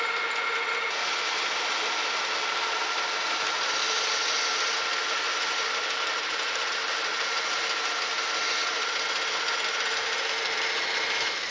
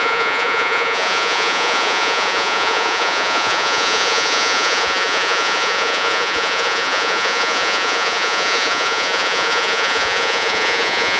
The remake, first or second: second